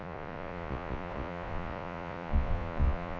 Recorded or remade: remade